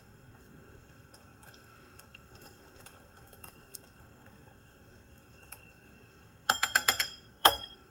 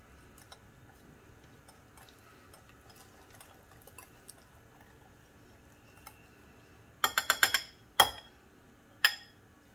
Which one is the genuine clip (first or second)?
second